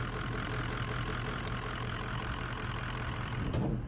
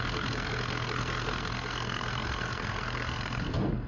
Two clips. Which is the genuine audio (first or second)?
first